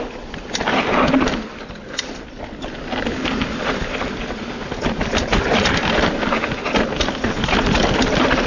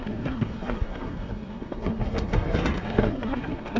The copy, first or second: second